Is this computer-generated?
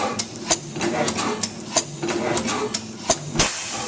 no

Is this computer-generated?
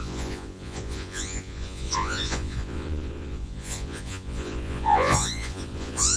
yes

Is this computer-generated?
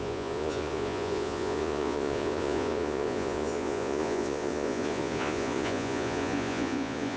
yes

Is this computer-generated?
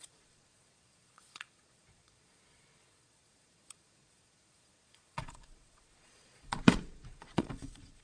yes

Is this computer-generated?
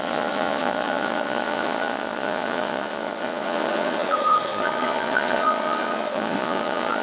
yes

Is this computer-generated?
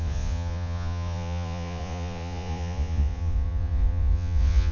yes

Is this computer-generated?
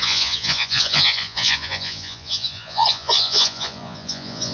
yes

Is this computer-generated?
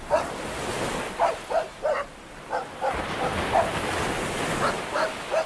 no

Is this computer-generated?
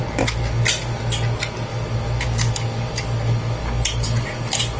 no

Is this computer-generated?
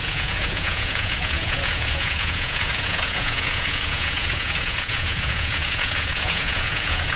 yes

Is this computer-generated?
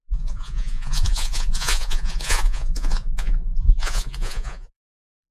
yes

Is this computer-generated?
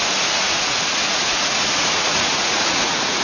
yes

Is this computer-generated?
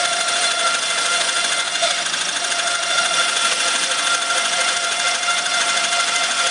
yes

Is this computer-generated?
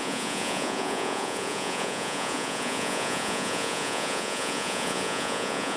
yes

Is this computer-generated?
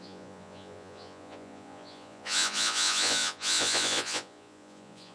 yes